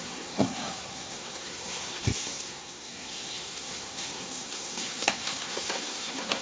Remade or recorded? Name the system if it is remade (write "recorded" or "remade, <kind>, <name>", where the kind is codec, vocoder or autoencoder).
remade, codec, SNAC